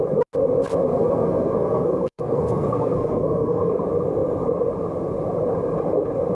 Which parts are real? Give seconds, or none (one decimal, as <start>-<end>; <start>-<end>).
0.0-0.9; 3.7-6.3